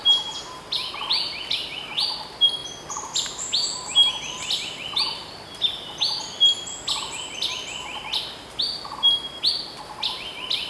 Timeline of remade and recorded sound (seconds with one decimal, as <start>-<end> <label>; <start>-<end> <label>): 0.0-10.7 recorded